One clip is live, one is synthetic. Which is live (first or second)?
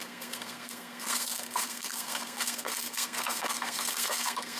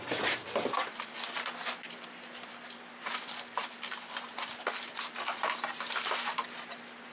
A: second